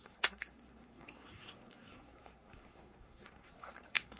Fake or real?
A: fake